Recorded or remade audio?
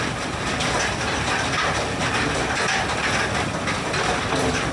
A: recorded